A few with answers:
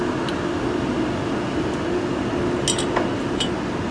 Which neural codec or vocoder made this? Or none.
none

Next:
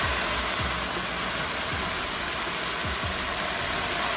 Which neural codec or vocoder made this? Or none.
none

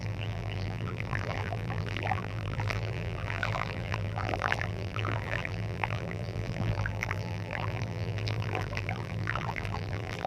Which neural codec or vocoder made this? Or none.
vocoder, BigVGAN v2